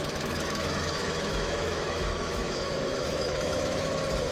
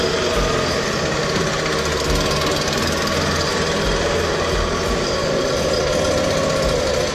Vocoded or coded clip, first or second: first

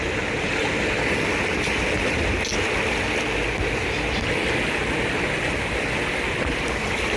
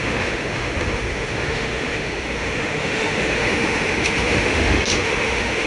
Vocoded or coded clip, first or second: second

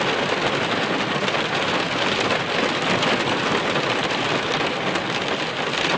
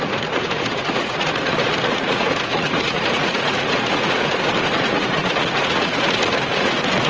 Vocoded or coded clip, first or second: second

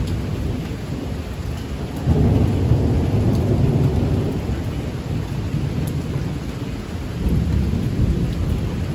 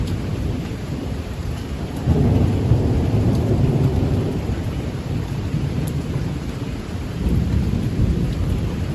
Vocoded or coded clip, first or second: second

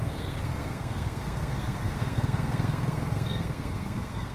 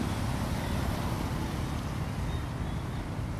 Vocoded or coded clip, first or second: first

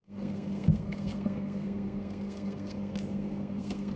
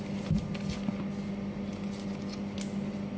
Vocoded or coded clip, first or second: first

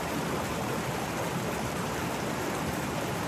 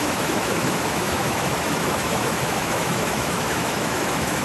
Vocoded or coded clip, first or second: second